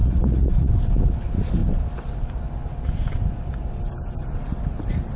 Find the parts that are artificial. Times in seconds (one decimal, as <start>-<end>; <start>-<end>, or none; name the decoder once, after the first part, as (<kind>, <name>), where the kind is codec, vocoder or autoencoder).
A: 0.0-0.7 (vocoder, Vocos)